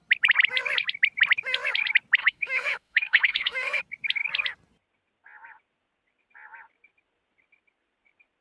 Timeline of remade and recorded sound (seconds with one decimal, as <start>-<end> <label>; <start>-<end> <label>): 0.0-2.2 recorded; 2.2-3.8 remade; 3.8-8.4 recorded

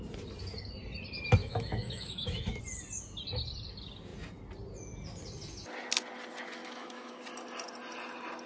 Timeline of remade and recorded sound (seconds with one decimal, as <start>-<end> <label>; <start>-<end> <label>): 0.0-1.4 recorded; 1.4-2.6 remade; 2.6-6.6 recorded; 6.6-7.2 remade; 7.2-8.5 recorded